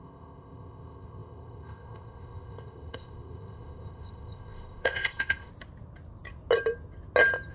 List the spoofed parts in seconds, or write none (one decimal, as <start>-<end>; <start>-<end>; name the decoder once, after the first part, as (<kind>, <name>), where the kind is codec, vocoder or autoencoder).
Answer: 0.0-5.5 (codec, ZipCodec)